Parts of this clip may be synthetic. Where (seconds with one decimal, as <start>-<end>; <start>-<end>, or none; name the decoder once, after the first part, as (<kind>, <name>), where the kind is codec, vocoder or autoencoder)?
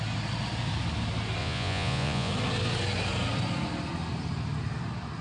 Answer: 1.4-2.3 (vocoder, Vocos)